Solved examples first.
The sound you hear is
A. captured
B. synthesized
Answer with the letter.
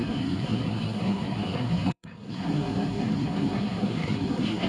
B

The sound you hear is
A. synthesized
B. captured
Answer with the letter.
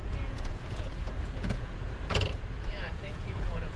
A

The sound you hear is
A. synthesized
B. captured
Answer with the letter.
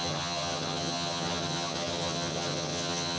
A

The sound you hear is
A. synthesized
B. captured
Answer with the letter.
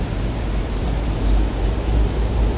A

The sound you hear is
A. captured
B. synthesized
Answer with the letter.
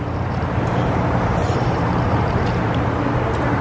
B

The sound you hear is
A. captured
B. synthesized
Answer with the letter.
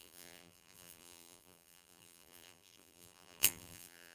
B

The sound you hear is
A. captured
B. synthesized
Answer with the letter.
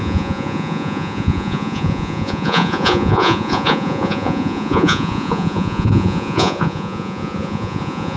B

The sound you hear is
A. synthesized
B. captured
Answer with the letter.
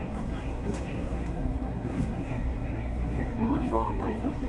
A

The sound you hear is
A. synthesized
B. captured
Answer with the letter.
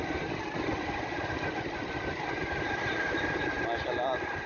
B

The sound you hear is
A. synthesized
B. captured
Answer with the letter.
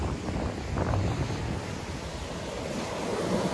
B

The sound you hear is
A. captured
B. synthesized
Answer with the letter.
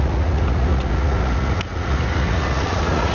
B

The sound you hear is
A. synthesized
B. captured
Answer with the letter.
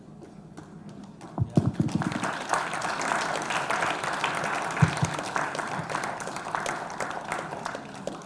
B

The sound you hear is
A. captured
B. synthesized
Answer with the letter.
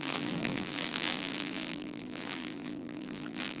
B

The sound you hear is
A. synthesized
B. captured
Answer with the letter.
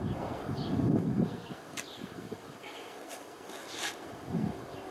A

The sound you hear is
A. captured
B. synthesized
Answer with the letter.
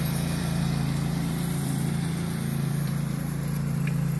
B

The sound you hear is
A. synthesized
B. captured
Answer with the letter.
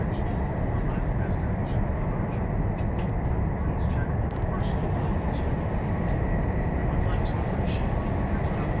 B